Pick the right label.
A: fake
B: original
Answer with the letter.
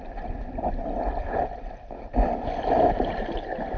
B